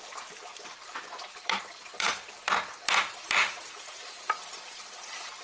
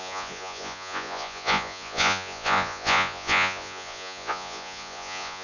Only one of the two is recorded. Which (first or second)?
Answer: first